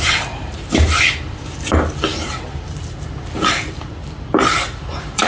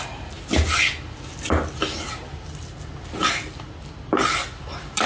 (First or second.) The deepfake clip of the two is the first